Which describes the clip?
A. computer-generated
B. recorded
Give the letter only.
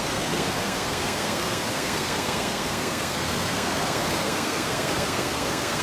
A